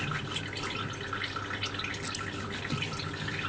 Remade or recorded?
recorded